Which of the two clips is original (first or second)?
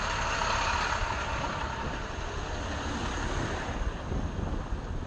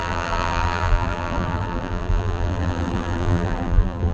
first